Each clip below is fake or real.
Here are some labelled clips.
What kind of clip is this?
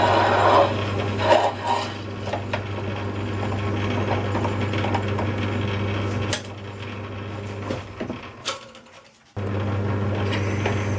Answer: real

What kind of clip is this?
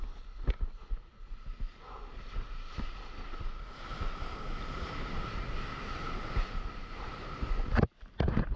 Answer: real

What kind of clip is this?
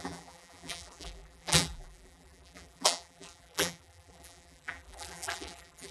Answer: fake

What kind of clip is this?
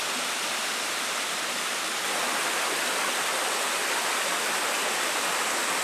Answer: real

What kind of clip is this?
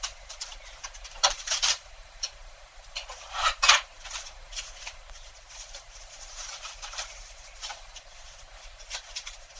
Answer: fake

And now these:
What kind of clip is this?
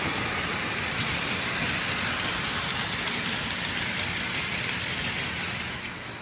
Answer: fake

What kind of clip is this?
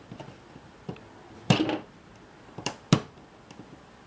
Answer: fake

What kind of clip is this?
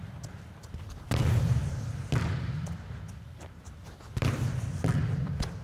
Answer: fake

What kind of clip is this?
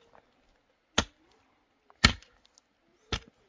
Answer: real